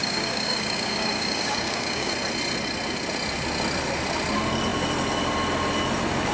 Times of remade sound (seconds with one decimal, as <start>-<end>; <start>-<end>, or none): 0.0-2.1